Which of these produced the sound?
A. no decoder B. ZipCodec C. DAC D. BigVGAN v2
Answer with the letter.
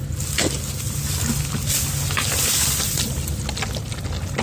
A